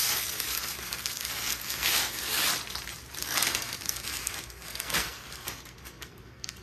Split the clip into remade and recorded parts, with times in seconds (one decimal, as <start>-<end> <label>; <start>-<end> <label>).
0.0-2.4 remade; 2.4-3.2 recorded; 3.2-6.6 remade